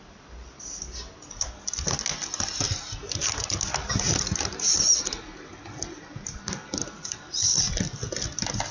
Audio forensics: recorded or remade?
recorded